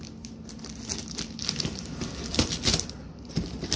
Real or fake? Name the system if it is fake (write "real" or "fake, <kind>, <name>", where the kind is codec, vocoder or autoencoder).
real